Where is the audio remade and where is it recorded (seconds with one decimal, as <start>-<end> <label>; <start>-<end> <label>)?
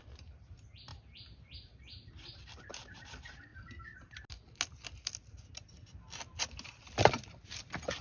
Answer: 0.0-8.0 recorded